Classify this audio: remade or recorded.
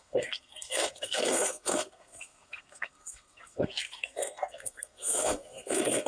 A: remade